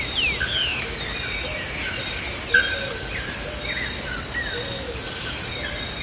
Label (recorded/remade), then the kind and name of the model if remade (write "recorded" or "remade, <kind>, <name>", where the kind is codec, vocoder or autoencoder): recorded